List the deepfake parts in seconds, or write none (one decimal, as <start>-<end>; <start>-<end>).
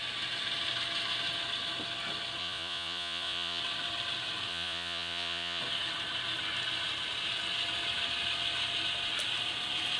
2.4-3.6; 4.5-5.6